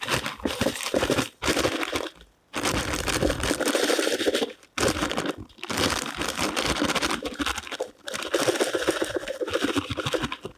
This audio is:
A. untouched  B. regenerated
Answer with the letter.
A